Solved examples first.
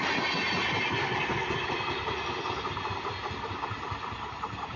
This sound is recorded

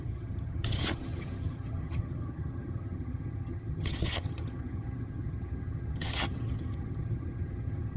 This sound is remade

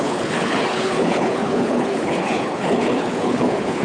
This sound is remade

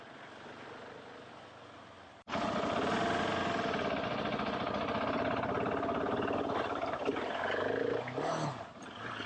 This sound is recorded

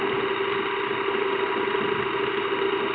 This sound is recorded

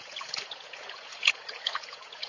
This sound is remade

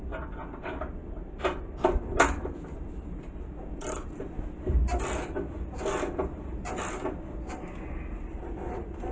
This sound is recorded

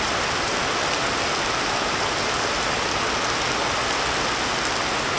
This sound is recorded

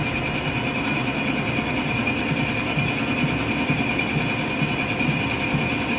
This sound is recorded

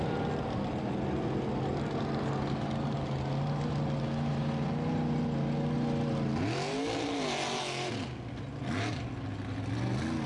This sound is recorded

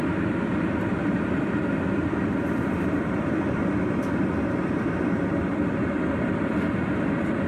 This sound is recorded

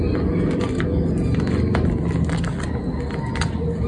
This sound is recorded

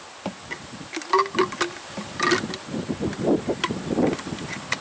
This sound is recorded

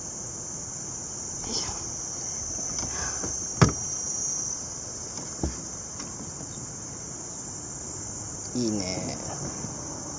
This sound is recorded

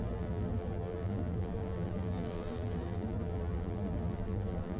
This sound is remade